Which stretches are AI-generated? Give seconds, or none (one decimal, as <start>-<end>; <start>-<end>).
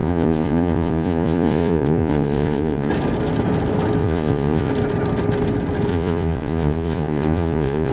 0.0-2.9; 4.0-4.7; 5.9-7.9